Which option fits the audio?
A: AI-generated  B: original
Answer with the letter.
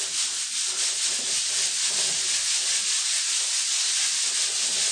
B